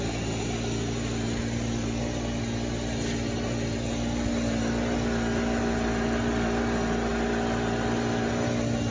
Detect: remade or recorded recorded